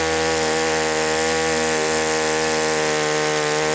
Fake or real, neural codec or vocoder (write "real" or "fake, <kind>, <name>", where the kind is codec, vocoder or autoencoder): real